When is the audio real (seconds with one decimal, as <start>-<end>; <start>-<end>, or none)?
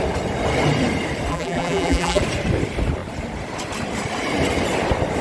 0.0-1.3; 2.2-5.2